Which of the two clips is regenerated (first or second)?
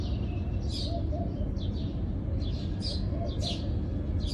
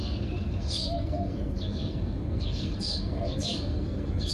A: second